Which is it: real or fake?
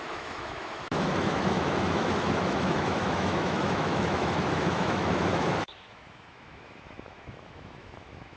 fake